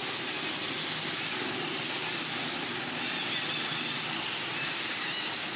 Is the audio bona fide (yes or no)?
yes